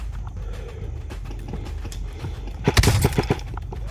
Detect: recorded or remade recorded